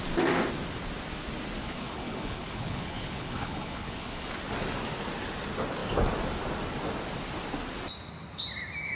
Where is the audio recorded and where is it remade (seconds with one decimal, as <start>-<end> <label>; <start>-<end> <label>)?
0.0-1.6 recorded; 1.6-4.3 remade; 4.3-9.0 recorded